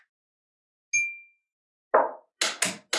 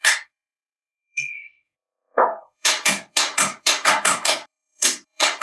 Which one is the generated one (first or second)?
second